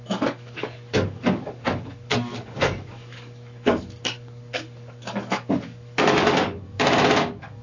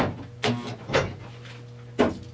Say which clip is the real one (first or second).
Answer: second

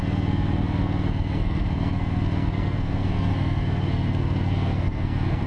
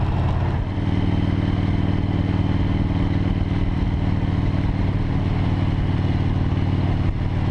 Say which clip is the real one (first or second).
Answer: second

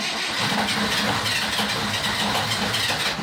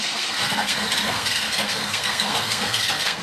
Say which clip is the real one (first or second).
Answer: first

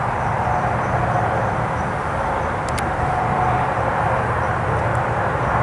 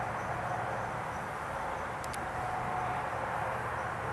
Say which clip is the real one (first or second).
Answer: second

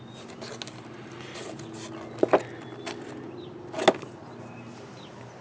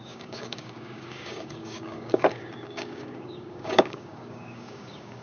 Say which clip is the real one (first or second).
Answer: first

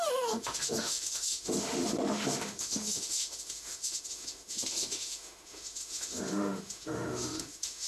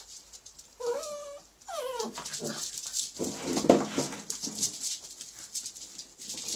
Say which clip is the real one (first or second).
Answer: second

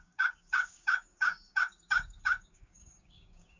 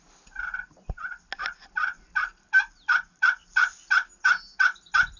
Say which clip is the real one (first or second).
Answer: second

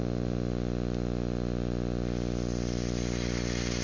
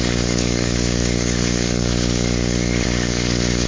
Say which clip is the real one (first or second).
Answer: first